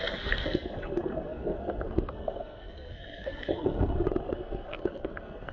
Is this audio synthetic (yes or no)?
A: yes